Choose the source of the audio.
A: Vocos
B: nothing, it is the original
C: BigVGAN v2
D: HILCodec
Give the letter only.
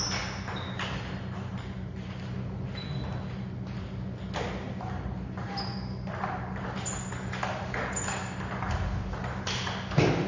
B